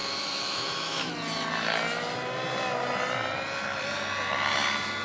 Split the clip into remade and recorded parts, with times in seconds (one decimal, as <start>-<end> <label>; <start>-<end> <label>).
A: 0.0-1.1 remade; 1.1-5.0 recorded

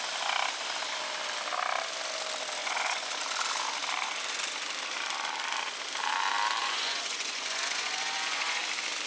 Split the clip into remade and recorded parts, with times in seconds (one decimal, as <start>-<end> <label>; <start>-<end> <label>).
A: 0.0-2.6 recorded; 2.6-3.1 remade; 3.1-6.6 recorded; 6.6-8.6 remade; 8.6-9.1 recorded

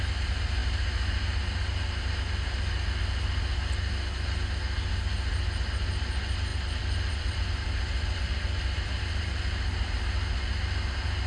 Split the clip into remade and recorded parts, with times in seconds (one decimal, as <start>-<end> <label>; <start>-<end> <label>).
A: 0.0-6.5 recorded; 6.5-9.3 remade; 9.3-11.3 recorded

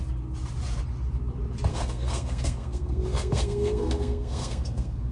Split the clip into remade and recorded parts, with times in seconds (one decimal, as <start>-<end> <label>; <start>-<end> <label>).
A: 0.0-1.7 recorded; 1.7-5.1 remade

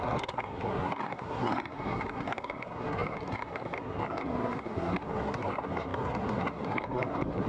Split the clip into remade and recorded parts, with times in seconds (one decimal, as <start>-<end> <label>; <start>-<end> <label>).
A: 0.0-7.5 remade

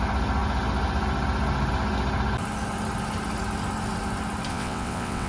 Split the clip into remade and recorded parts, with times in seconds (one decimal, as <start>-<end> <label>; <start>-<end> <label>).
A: 0.0-4.5 recorded; 4.5-5.3 remade

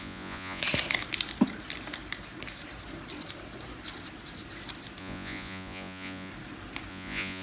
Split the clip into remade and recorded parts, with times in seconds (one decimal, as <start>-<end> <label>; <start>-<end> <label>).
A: 0.0-0.6 remade; 0.6-5.0 recorded; 5.0-6.3 remade; 6.3-6.9 recorded; 6.9-7.4 remade